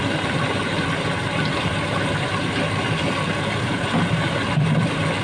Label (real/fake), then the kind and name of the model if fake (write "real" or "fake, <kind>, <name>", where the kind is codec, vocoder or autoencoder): real